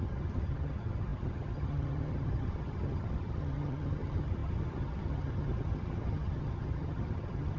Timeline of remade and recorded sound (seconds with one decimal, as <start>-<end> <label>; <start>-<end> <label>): 0.0-7.6 remade